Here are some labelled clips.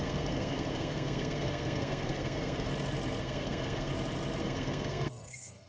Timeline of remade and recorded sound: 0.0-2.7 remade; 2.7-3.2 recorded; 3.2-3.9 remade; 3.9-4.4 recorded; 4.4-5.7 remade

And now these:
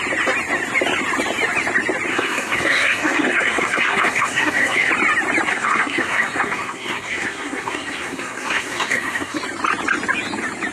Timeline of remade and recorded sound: 0.0-2.1 recorded; 2.1-4.9 remade; 4.9-5.5 recorded; 5.5-9.4 remade; 9.4-10.7 recorded

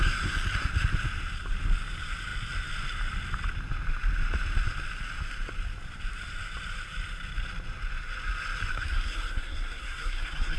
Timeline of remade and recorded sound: 0.0-8.7 recorded; 8.7-10.6 remade

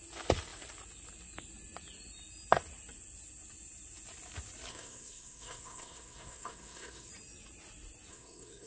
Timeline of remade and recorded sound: 0.0-4.7 recorded; 4.7-7.1 remade; 7.1-8.1 recorded; 8.1-8.7 remade